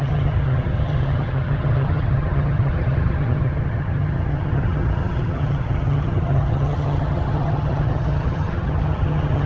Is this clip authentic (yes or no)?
no